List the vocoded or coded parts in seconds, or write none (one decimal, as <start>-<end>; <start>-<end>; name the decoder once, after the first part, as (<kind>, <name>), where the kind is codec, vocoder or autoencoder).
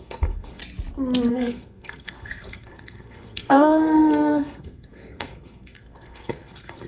0.0-0.6 (codec, SNAC); 1.3-6.9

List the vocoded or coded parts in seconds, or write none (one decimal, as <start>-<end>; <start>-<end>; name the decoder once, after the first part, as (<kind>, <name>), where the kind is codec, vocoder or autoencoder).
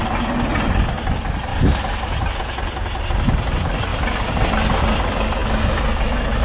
none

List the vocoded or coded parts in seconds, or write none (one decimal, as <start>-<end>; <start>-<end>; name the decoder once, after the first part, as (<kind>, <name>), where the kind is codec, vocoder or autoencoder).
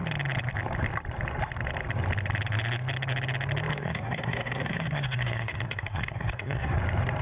3.7-6.8 (codec, SNAC)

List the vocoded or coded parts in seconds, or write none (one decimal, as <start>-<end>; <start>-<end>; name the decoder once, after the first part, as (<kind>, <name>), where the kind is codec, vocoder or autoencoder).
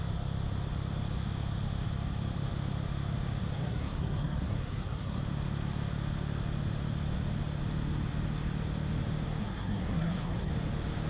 3.5-5.2 (codec, SNAC); 9.4-10.5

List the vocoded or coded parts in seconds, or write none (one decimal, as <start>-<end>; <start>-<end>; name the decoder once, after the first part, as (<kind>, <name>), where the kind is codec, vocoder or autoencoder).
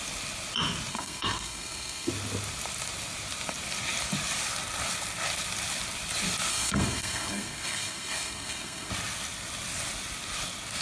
0.9-2.1 (codec, SNAC); 6.5-8.9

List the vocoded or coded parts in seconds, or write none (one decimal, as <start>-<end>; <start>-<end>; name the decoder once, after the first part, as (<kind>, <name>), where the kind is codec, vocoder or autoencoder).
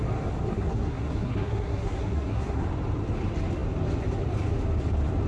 0.5-2.6 (codec, SNAC)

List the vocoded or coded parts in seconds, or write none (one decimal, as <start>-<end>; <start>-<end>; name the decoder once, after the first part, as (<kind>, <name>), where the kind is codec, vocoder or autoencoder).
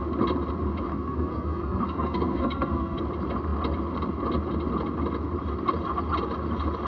0.9-3.0 (codec, SNAC)